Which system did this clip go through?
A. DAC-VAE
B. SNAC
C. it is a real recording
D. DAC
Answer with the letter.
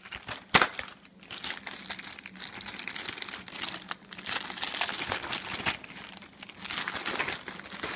C